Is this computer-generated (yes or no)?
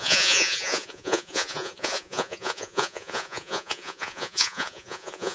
yes